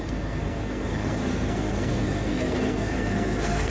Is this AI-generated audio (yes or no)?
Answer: yes